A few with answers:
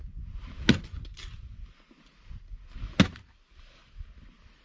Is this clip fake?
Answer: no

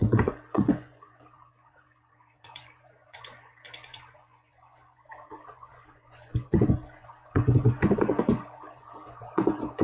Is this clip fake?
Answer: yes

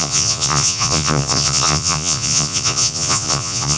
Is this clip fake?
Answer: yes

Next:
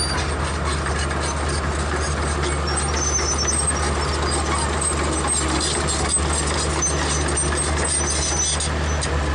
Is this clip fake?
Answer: no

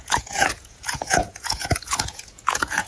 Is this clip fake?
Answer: yes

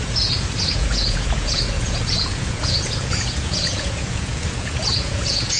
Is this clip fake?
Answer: yes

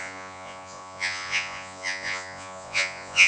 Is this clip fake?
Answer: yes